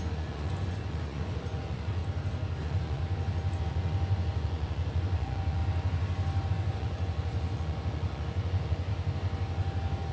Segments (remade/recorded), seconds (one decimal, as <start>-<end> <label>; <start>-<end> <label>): 0.0-2.0 remade; 2.0-2.6 recorded; 2.6-3.0 remade; 3.0-3.6 recorded; 3.6-5.6 remade; 5.6-6.5 recorded; 6.5-8.9 remade; 8.9-10.1 recorded